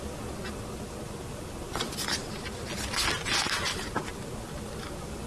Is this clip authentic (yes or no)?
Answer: yes